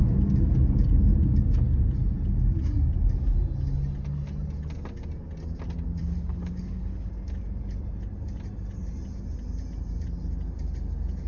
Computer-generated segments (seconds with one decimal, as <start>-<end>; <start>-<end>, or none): 6.0-7.1